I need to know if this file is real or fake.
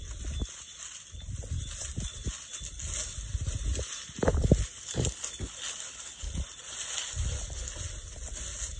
real